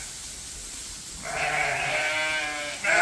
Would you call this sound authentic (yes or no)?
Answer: yes